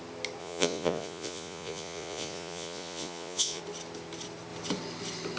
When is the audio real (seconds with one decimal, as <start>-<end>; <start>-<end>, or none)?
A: 0.0-0.4; 3.6-5.4